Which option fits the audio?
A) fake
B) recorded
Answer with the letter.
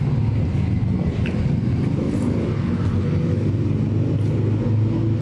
B